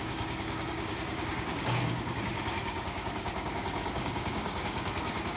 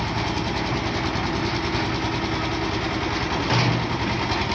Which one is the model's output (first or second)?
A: first